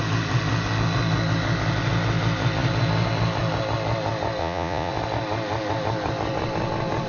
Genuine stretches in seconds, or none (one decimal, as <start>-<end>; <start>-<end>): 0.0-4.4; 4.9-7.1